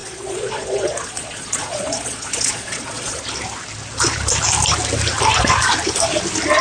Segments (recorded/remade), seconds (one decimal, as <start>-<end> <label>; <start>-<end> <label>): 0.0-3.2 remade; 3.2-6.6 recorded